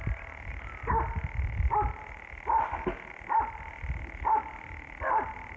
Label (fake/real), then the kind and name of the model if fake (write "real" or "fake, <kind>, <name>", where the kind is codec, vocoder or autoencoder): real